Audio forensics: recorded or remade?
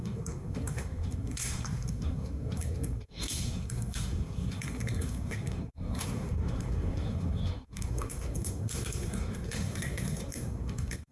remade